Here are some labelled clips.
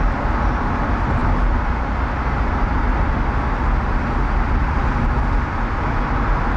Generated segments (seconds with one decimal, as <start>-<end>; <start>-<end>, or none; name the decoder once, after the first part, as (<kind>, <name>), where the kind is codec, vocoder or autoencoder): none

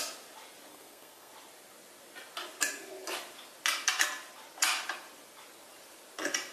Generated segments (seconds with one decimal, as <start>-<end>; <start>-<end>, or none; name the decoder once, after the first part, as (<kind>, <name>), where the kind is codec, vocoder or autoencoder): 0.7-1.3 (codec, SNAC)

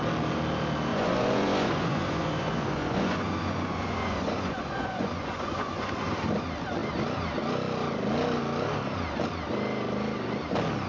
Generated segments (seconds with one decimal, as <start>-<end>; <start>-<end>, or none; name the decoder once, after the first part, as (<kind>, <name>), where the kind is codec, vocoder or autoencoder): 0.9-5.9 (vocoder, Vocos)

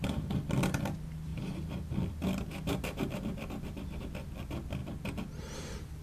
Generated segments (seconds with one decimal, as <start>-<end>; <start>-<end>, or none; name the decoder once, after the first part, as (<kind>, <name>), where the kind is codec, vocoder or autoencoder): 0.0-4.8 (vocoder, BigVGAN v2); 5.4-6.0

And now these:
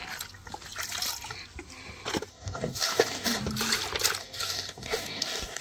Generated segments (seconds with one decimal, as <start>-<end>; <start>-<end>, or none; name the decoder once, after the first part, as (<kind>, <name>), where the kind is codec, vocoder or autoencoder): 2.3-3.4 (codec, DAC); 4.2-5.6

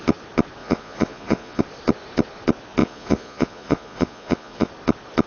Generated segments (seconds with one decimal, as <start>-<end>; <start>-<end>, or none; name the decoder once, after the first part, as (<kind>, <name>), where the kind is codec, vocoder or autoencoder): 0.6-1.6 (vocoder, Vocos); 2.8-4.7

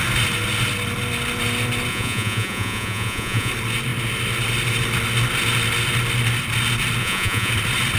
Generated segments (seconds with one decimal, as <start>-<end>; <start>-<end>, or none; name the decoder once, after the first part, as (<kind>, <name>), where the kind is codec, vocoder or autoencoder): 1.9-3.5 (vocoder, Vocos); 7.0-7.5